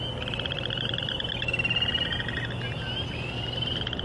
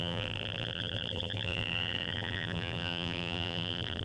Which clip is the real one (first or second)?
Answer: first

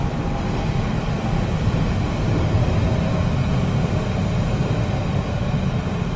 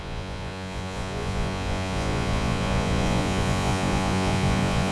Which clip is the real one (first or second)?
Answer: first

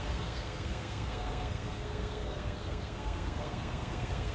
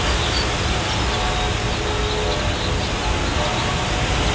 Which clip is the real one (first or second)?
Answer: second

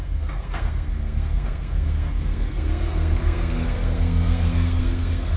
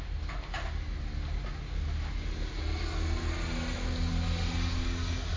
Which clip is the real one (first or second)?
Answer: second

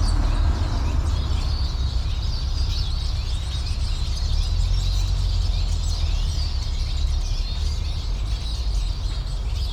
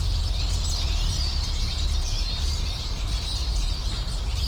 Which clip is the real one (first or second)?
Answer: first